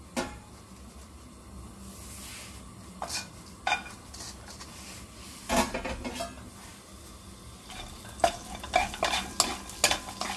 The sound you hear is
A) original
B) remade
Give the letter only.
A